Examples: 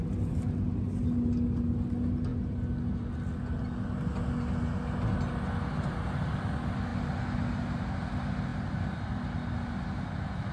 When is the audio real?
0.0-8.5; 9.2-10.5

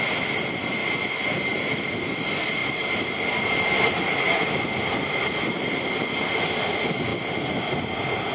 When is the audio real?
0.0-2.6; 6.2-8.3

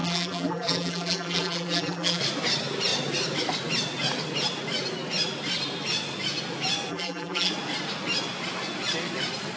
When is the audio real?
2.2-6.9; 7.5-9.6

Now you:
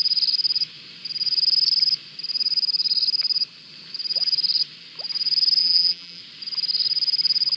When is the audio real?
0.0-5.6; 6.2-7.6

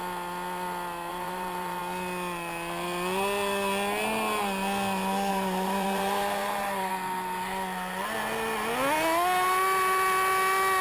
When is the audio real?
0.0-1.1; 1.8-5.3; 6.9-10.8

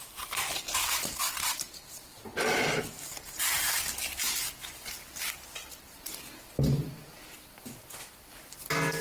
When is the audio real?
1.5-9.0